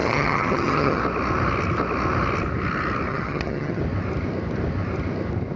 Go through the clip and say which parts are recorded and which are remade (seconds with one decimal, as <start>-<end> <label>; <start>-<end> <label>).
0.0-1.0 remade; 1.0-3.1 recorded; 3.1-3.8 remade; 3.8-5.6 recorded